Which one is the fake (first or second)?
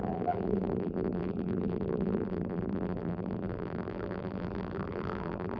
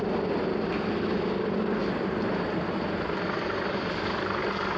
first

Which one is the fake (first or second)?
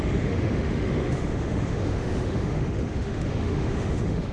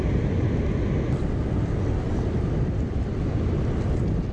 first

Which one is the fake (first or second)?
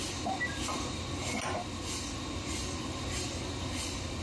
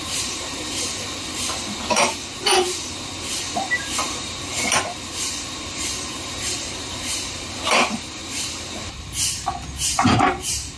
second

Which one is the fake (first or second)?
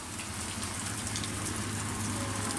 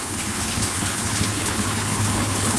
second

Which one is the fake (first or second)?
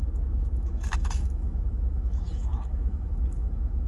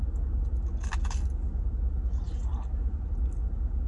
first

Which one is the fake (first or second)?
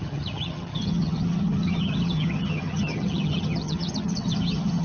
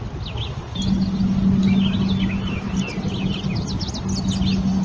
first